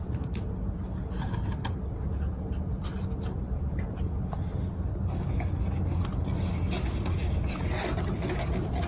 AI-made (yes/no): no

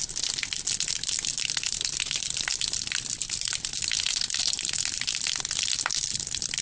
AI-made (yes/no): no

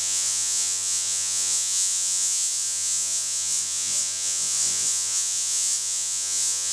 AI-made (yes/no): yes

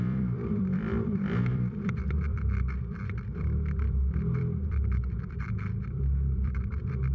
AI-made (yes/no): yes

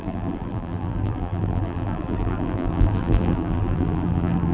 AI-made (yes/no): yes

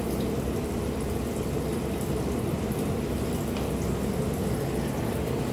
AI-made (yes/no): no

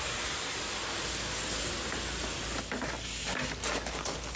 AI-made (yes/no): no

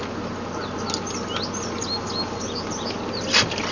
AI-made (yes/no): no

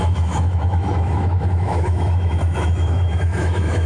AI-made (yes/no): yes